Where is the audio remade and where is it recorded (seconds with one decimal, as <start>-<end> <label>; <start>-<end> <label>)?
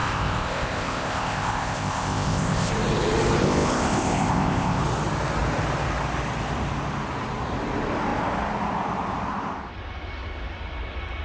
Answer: 0.0-2.7 remade; 2.7-3.4 recorded; 3.4-4.8 remade; 4.8-11.2 recorded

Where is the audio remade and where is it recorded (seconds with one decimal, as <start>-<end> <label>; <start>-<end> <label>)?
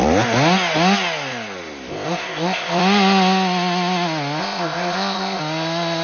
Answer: 0.0-1.9 recorded; 1.9-2.8 remade; 2.8-4.4 recorded; 4.4-5.4 remade; 5.4-6.0 recorded